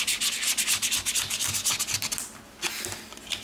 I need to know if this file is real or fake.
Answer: real